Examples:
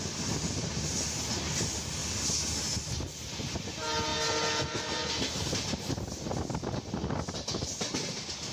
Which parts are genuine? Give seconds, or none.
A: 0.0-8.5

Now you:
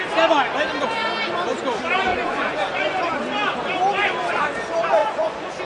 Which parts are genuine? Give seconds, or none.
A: 0.0-2.1; 3.0-5.0

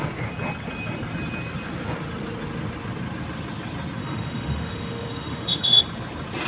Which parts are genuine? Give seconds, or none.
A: 0.0-4.0; 5.8-6.5

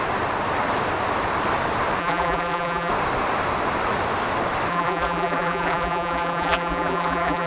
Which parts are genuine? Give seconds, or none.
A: 0.0-2.0; 2.9-4.7

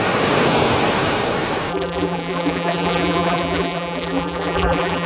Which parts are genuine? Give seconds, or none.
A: 0.0-1.7

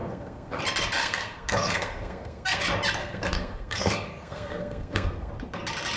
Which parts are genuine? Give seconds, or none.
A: 0.6-1.0; 2.6-3.0; 5.3-6.0

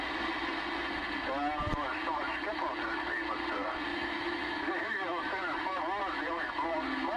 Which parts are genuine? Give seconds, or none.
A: 0.0-3.9; 5.8-7.2

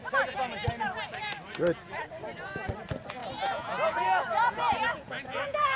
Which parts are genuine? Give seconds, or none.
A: 0.0-3.2